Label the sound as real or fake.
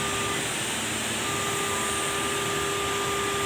real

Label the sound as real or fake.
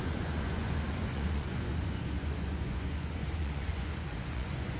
fake